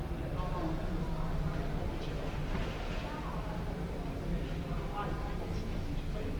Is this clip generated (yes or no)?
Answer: no